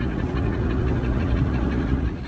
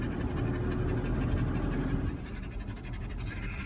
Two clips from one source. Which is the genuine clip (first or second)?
second